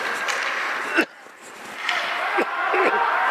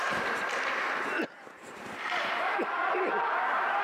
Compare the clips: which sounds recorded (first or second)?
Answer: first